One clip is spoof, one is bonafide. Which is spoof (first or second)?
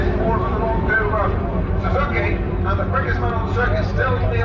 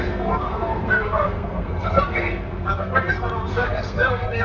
second